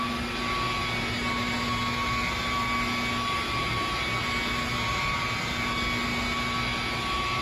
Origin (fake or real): real